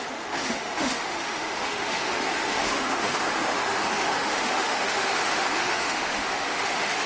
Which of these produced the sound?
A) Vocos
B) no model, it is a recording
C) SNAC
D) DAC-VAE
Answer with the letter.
D